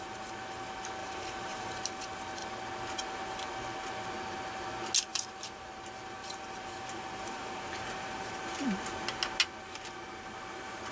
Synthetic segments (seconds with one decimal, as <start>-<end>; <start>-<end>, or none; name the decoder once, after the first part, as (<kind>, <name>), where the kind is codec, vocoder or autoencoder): 1.0-1.8 (vocoder, BigVGAN v2); 5.1-5.7; 6.2-8.3